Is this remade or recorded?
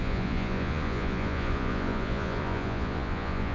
remade